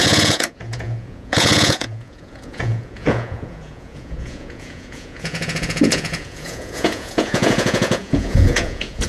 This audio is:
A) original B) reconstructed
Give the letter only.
B